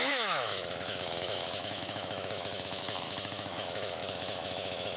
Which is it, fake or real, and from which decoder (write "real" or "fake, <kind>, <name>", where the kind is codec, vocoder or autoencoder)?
fake, autoencoder, DAC-VAE